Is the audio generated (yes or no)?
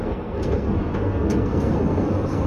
yes